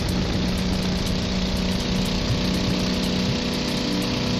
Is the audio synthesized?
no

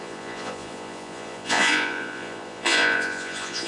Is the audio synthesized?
yes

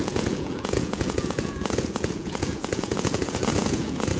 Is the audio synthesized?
yes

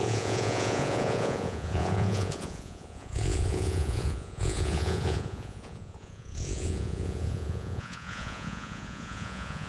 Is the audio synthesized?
yes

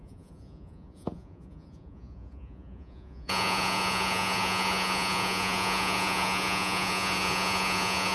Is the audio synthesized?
yes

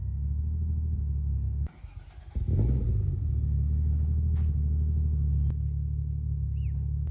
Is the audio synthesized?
no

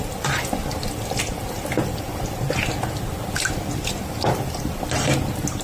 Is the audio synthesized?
no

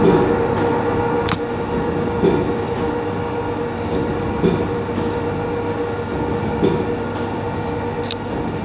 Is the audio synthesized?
no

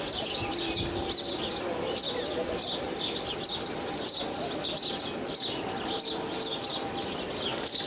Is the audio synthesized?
no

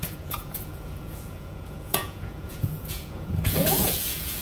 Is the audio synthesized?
yes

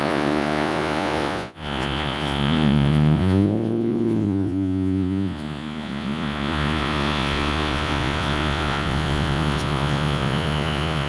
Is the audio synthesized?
yes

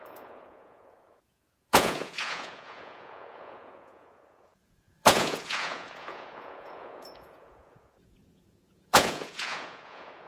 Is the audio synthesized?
yes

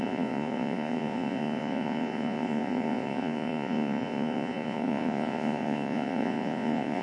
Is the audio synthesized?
yes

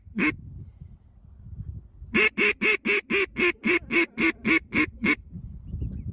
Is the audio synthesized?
no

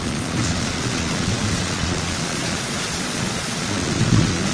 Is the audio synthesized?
yes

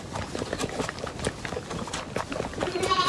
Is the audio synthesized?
no